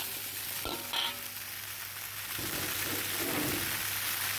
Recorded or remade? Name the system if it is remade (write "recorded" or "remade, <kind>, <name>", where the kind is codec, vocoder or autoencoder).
recorded